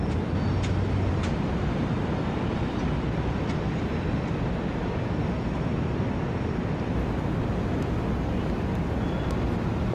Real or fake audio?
real